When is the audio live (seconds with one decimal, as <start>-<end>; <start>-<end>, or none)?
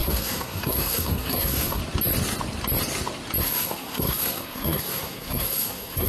1.8-3.4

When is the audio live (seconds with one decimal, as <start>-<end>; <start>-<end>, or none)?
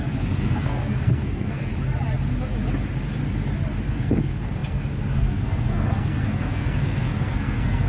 1.7-3.9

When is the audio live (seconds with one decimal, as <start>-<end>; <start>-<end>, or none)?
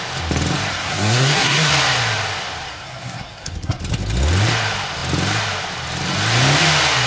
0.0-0.7; 1.7-2.7; 3.8-7.1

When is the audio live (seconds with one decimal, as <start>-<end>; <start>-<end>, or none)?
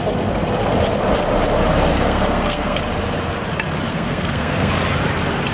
0.0-1.9; 2.8-3.9; 4.7-5.5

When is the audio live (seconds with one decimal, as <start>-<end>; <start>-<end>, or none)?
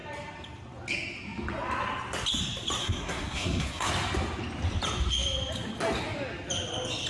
0.0-2.8; 3.9-7.1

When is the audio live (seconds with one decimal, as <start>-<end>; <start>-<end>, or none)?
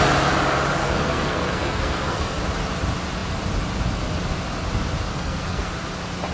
0.0-0.8; 2.4-5.1; 5.7-6.3